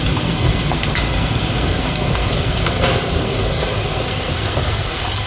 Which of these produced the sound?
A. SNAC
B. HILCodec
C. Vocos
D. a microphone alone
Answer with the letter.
A